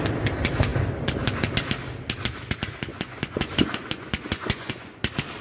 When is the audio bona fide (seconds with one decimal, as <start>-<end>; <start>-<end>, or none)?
0.0-2.9; 5.0-5.4